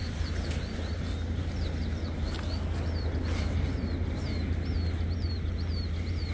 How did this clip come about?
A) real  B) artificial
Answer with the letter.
A